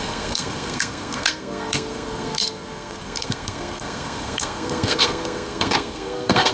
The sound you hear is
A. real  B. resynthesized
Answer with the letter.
B